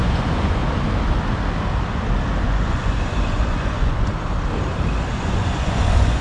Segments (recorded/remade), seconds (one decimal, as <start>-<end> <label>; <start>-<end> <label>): 0.0-0.6 remade; 0.6-2.4 recorded; 2.4-4.1 remade; 4.1-5.1 recorded; 5.1-6.2 remade